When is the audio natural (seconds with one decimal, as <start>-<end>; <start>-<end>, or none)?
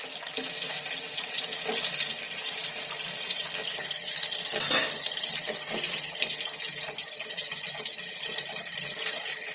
0.0-9.5